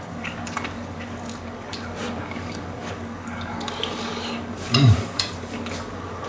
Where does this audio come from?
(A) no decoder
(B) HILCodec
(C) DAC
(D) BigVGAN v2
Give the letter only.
C